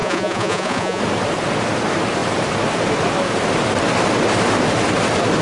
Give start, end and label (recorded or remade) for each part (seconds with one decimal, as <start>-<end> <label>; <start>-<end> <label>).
0.0-1.0 remade; 1.0-5.4 recorded